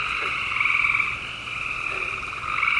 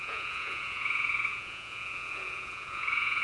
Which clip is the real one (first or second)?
first